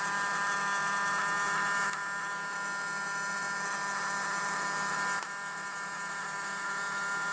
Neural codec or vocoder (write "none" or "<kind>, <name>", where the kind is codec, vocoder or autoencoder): none